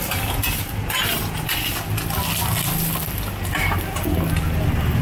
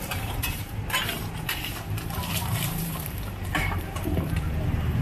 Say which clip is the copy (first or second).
second